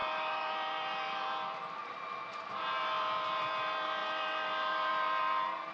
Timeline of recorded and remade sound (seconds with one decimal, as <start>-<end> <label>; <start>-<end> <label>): 0.0-0.5 remade; 0.5-5.7 recorded